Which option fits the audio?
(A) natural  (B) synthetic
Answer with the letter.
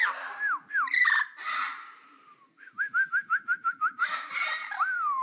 B